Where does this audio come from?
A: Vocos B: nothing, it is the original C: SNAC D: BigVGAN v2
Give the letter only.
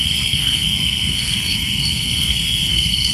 C